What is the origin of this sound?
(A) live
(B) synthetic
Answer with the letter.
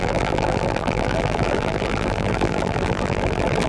B